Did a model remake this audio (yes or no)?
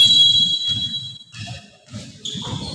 no